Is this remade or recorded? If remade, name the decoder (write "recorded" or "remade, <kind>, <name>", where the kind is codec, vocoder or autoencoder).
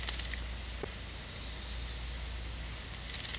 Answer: recorded